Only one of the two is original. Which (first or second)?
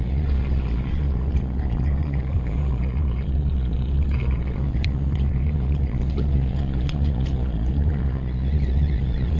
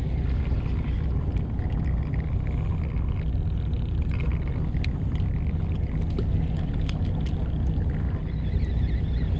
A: second